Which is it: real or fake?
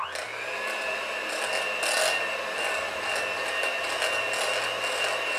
real